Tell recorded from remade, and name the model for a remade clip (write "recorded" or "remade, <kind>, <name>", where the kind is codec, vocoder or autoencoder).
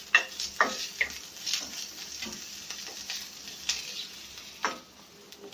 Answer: remade, vocoder, BigVGAN v2